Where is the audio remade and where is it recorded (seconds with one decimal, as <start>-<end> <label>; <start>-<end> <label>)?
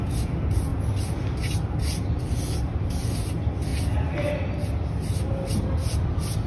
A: 0.0-6.5 recorded